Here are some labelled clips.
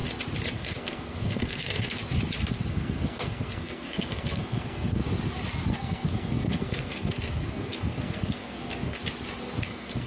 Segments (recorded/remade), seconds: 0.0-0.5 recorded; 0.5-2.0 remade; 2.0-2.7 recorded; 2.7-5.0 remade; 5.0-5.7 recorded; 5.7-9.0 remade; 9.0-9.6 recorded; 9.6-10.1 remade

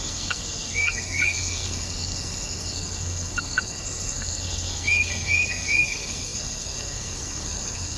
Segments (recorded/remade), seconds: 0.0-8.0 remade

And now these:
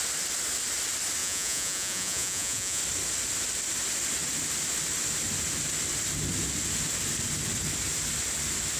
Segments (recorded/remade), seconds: 0.0-1.2 recorded; 1.2-2.8 remade; 2.8-8.8 recorded

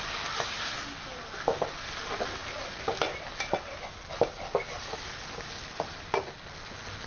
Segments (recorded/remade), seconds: 0.0-7.1 recorded

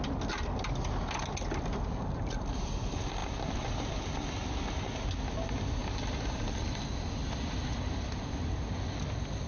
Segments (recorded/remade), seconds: 0.0-3.2 recorded; 3.2-3.9 remade; 3.9-5.8 recorded; 5.8-8.7 remade; 8.7-9.5 recorded

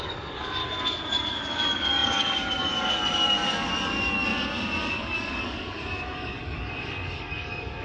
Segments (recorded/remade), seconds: 0.0-0.6 remade; 0.6-1.1 recorded; 1.1-4.3 remade; 4.3-4.9 recorded; 4.9-7.8 remade

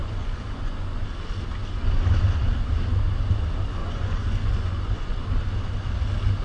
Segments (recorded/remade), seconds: 0.0-1.0 remade; 1.0-3.8 recorded; 3.8-5.3 remade; 5.3-6.4 recorded